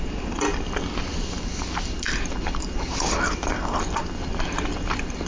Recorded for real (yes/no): yes